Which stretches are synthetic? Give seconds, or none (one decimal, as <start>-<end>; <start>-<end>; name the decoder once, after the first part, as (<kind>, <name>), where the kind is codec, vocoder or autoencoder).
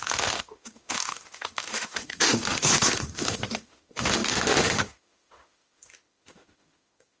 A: 0.0-7.2 (autoencoder, DAC-VAE)